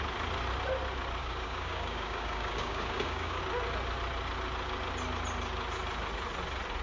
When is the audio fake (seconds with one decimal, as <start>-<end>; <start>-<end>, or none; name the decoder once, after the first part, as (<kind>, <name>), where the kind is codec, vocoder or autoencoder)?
1.2-3.4 (codec, DAC)